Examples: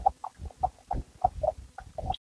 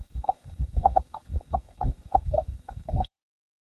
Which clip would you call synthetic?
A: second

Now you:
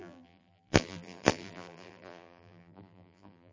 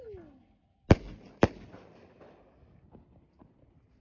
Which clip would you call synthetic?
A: first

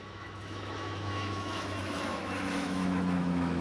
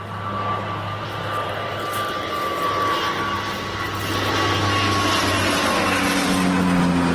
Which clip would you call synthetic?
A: first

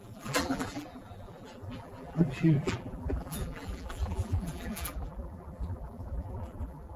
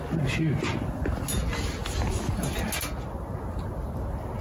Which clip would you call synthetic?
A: first